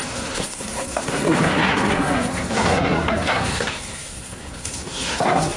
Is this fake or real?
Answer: fake